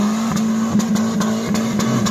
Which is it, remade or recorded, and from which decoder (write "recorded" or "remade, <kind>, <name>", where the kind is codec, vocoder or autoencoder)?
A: recorded